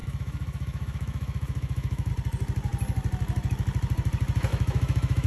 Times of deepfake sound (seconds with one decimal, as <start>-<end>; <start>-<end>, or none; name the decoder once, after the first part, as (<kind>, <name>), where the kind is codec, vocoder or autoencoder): 0.0-2.1 (autoencoder, DAC-VAE); 4.5-5.3